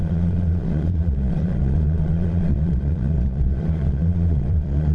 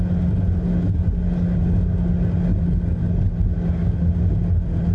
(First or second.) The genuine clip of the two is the second